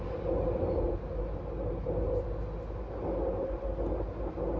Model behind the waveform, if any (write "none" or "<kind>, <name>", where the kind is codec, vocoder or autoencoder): none